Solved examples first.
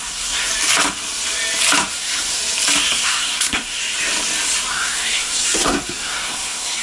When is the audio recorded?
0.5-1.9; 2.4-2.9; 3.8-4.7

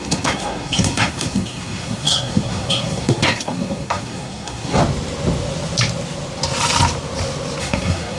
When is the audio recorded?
4.8-7.6

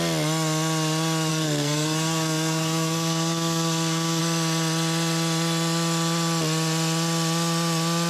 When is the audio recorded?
0.0-1.3; 4.2-8.1

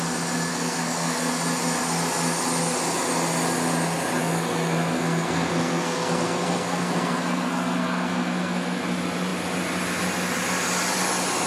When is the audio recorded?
0.0-0.5; 1.3-4.2; 8.8-11.5

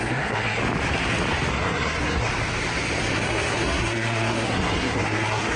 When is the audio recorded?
0.6-1.5; 2.3-3.0